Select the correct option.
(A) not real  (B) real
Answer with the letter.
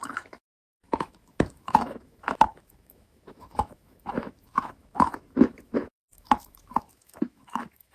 A